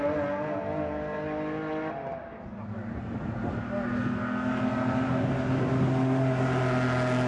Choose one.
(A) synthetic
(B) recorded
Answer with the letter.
B